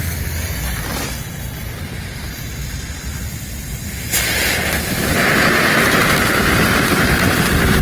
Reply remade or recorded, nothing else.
recorded